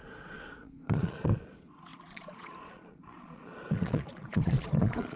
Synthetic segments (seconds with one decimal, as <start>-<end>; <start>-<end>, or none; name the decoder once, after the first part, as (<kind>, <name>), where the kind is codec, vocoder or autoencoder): 0.0-5.2 (vocoder, Vocos)

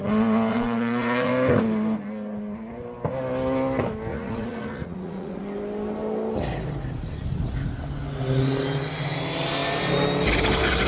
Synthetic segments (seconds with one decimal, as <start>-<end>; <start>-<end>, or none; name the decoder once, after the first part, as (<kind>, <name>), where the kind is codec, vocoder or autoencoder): 0.5-1.3 (vocoder, Vocos); 4.1-5.4

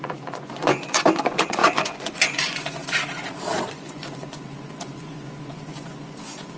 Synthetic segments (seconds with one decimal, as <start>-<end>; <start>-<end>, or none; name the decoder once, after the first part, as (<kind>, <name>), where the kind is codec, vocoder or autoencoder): 0.0-2.8 (vocoder, Vocos); 3.6-6.6

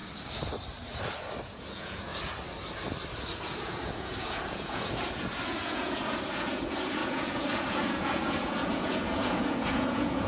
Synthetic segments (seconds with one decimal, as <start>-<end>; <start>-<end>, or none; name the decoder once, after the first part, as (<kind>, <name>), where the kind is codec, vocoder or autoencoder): 1.4-2.1 (vocoder, Vocos); 3.3-10.3

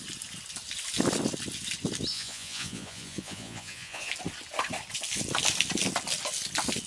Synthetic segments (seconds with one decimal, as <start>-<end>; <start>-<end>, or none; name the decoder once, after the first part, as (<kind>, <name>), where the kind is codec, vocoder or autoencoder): 2.1-4.1 (vocoder, Vocos)